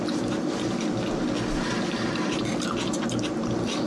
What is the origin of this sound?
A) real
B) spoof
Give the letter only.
A